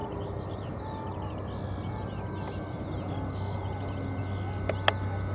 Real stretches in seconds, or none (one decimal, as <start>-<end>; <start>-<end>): 0.0-5.3